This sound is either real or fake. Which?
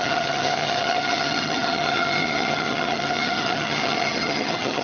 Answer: fake